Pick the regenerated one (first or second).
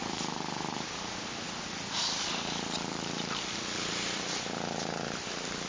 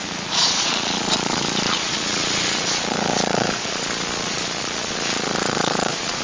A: second